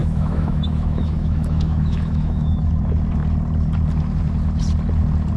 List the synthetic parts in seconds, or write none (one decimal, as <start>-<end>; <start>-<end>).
0.0-2.7

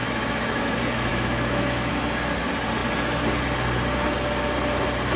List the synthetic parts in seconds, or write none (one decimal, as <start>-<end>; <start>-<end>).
0.0-0.6; 1.1-1.9

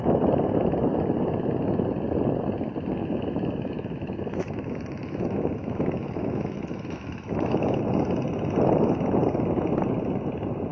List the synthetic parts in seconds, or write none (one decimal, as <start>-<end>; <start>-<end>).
3.0-7.8

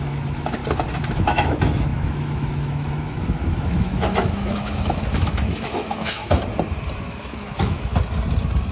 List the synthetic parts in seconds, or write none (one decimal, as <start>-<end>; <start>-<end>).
0.0-0.6; 1.1-6.2; 7.0-7.9